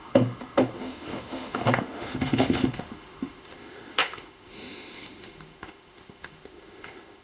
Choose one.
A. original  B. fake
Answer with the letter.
B